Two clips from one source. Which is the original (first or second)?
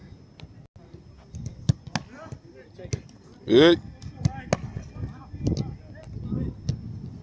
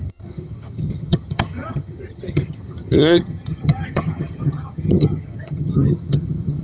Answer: first